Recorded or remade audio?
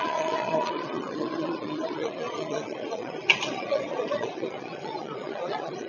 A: remade